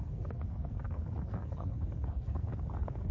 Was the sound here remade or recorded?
remade